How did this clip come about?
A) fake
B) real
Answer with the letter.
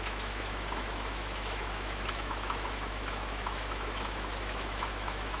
A